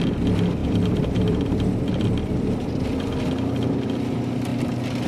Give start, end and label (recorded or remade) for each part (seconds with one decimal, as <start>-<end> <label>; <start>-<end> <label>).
0.0-0.6 recorded; 0.6-3.7 remade; 3.7-5.1 recorded